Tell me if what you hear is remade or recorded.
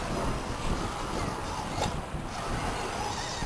recorded